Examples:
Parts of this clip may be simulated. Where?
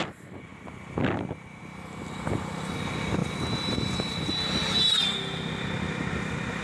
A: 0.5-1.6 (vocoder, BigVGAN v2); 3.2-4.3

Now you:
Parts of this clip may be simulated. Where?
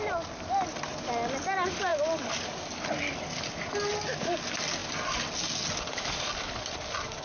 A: none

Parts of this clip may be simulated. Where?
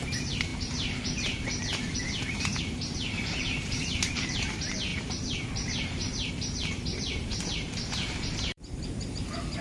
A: 0.0-9.6 (vocoder, BigVGAN v2)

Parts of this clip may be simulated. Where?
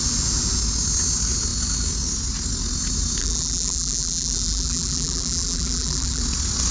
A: 3.2-6.2 (vocoder, BigVGAN v2)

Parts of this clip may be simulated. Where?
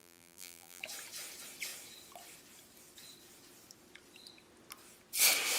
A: 0.0-0.8 (vocoder, BigVGAN v2)